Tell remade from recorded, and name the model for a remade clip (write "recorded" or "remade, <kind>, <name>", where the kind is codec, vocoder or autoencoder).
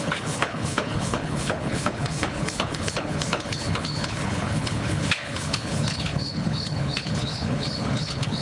remade, codec, HILCodec